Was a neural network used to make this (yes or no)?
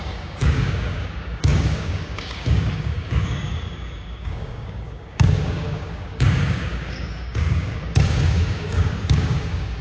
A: yes